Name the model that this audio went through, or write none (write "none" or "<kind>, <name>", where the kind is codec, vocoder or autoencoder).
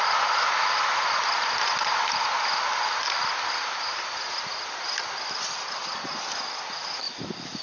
none